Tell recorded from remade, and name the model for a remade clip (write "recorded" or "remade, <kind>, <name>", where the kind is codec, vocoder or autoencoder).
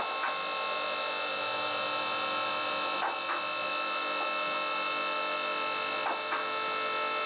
recorded